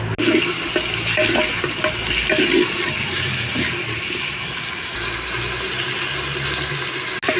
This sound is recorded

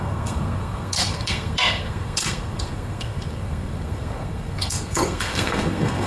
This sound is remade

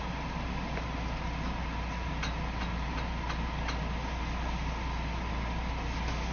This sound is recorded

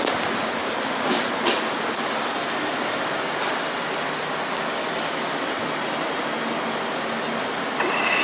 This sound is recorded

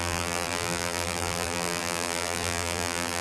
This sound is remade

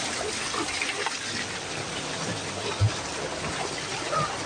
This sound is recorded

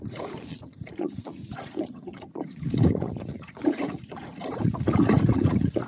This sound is remade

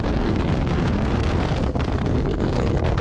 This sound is remade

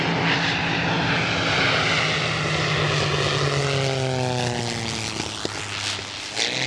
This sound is recorded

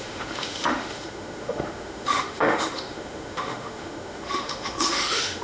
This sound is remade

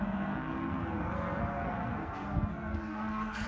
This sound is remade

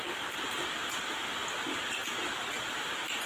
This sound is recorded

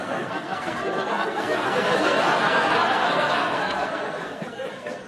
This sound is remade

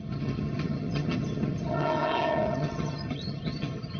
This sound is remade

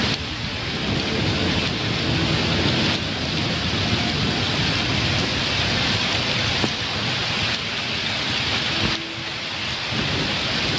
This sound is recorded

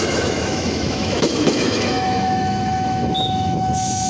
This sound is remade